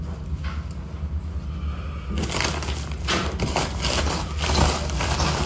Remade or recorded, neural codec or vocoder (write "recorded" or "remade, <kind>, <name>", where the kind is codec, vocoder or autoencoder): recorded